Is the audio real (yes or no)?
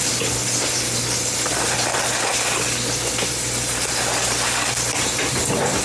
yes